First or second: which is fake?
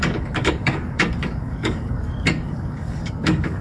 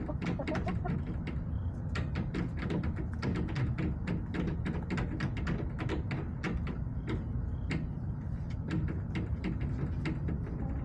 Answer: first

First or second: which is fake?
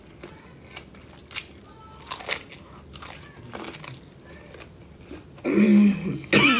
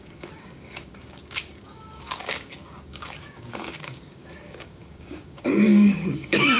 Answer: second